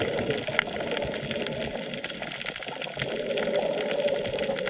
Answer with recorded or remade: recorded